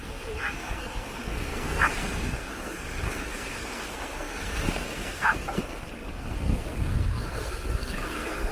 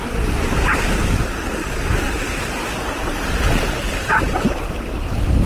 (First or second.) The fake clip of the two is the first